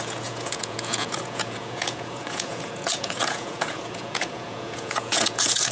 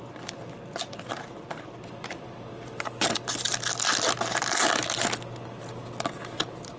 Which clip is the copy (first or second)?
first